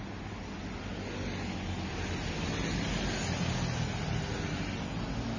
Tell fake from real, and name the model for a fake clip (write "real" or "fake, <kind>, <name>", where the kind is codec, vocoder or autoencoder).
real